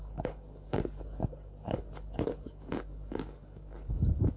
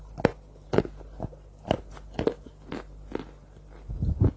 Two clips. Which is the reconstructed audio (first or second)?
first